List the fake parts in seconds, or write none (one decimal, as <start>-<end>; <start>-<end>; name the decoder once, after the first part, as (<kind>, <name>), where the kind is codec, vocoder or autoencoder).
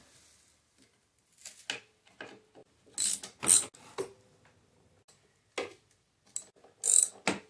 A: none